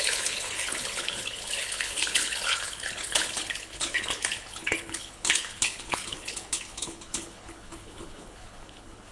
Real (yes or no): no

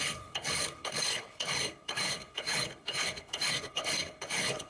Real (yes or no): no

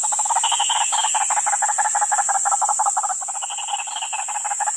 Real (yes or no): yes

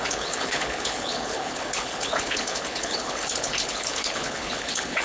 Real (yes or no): no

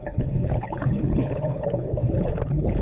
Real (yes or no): no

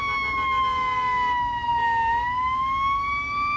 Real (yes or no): yes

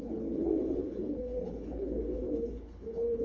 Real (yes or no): no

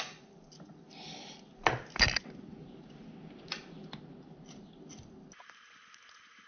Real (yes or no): yes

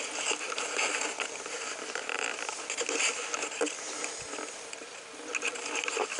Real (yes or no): yes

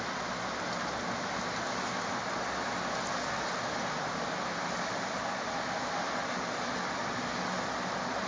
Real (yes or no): yes